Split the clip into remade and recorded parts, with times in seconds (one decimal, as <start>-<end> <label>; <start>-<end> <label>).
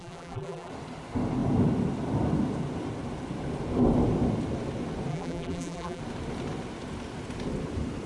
0.0-0.7 remade; 0.7-5.1 recorded; 5.1-6.0 remade; 6.0-8.1 recorded